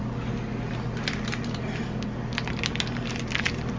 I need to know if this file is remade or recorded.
recorded